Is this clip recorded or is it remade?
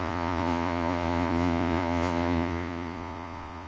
remade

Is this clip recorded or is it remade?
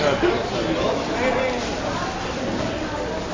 recorded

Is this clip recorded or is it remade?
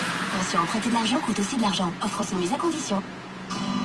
remade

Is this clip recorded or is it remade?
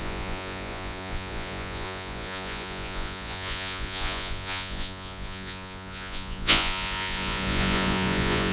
remade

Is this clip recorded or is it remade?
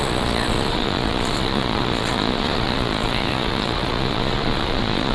remade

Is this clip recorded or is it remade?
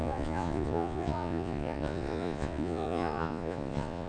remade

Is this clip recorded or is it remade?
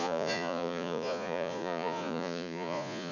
remade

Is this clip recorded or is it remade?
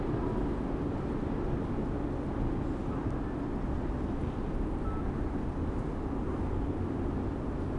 recorded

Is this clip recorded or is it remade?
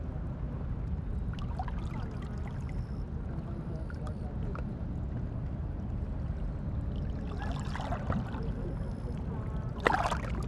recorded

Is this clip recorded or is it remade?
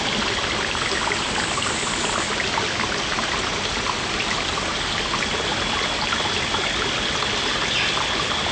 recorded